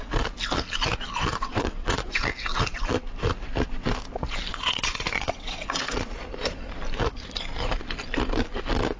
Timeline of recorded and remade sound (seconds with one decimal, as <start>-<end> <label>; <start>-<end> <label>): 0.0-1.3 recorded; 1.3-2.2 remade; 2.2-4.5 recorded; 4.5-6.1 remade; 6.1-9.0 recorded